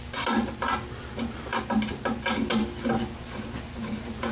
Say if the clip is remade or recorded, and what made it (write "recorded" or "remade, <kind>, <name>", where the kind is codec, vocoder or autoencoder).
recorded